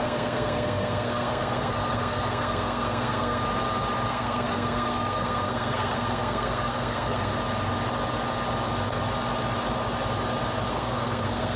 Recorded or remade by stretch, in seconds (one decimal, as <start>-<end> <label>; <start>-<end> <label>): 0.0-3.4 remade; 3.4-4.1 recorded; 4.1-7.3 remade; 7.3-10.7 recorded; 10.7-11.6 remade